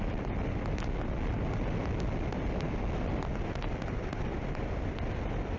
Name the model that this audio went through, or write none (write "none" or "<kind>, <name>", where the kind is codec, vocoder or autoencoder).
none